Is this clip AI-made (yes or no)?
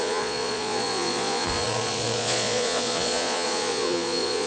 yes